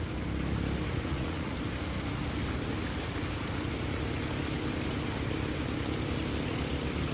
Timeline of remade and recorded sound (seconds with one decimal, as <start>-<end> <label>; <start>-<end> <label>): 0.0-1.1 recorded; 1.1-1.6 remade; 1.6-7.1 recorded

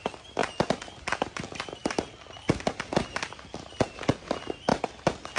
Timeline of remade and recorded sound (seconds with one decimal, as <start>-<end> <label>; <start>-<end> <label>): 0.0-5.4 recorded